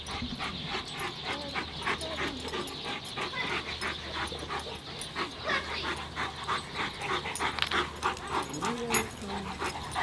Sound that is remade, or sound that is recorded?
recorded